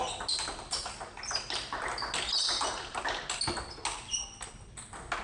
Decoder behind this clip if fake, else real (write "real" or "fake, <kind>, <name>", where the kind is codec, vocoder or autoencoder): real